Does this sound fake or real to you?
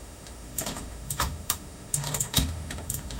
fake